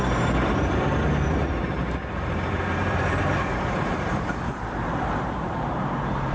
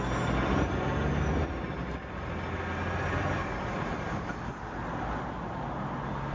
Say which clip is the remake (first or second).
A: first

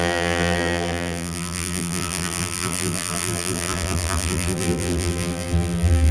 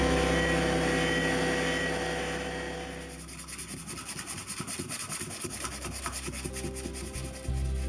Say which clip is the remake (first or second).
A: first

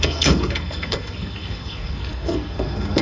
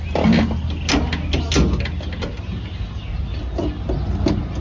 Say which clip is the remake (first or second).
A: first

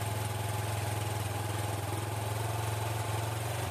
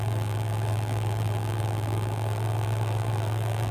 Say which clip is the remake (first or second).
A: second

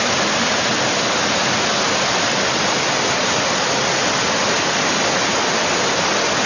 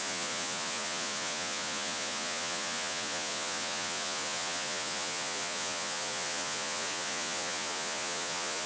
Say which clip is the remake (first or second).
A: second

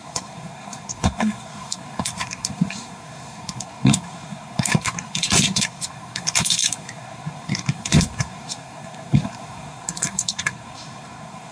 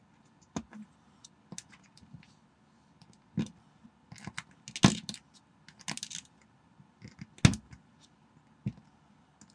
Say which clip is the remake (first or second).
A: first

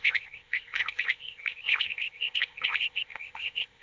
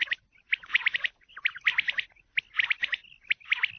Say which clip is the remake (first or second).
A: first